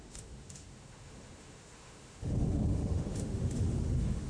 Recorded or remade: remade